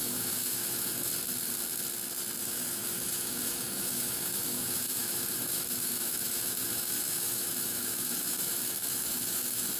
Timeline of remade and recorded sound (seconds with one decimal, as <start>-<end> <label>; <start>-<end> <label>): 0.0-1.1 remade; 1.1-2.4 recorded; 2.4-9.8 remade